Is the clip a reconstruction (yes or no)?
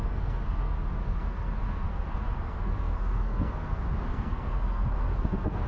yes